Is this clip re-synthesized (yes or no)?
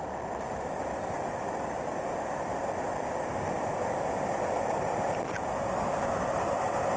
yes